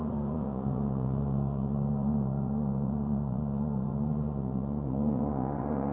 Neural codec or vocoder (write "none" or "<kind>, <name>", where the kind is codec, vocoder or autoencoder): vocoder, Vocos